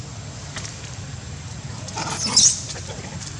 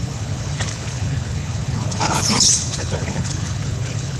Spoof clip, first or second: second